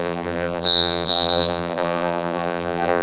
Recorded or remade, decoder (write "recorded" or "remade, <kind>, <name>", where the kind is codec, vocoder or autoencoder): remade, vocoder, BigVGAN v2